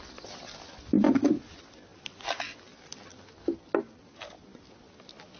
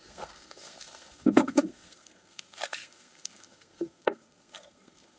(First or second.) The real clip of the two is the first